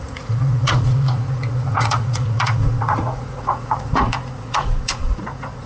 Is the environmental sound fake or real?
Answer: fake